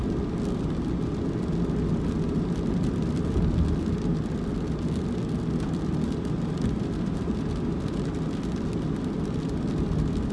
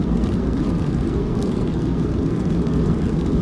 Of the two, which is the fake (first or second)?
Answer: second